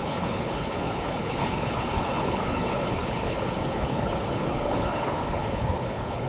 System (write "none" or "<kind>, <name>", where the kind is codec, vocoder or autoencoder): codec, HILCodec